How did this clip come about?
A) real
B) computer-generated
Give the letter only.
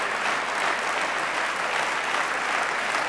A